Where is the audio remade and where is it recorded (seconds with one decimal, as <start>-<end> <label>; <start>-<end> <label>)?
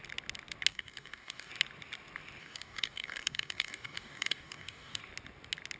0.0-0.7 recorded; 0.7-1.5 remade; 1.5-2.4 recorded; 2.4-5.0 remade; 5.0-5.8 recorded